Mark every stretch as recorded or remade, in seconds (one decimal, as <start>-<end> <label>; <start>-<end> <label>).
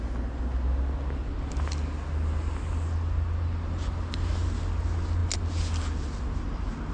0.0-6.9 recorded